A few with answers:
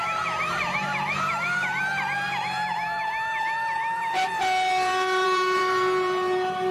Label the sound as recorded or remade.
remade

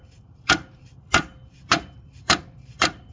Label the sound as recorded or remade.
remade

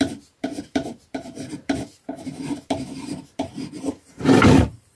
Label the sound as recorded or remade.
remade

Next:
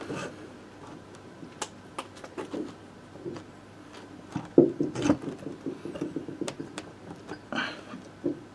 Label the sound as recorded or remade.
recorded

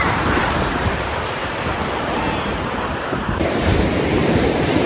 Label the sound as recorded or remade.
remade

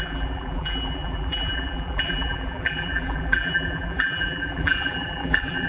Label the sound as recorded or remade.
remade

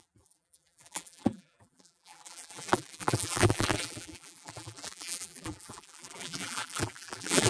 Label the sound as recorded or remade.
remade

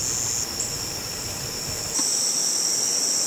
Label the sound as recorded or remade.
recorded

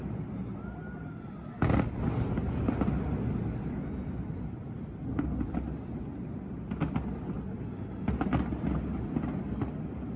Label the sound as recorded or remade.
recorded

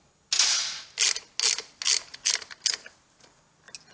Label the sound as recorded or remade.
recorded